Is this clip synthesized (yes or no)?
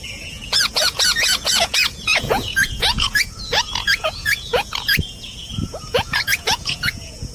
yes